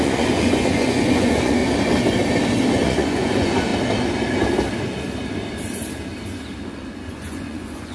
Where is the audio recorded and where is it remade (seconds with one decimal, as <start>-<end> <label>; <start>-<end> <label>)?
0.0-1.6 remade; 1.6-2.7 recorded; 2.7-3.7 remade; 3.7-6.7 recorded; 6.7-7.9 remade